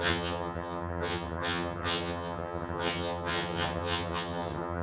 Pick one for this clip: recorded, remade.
remade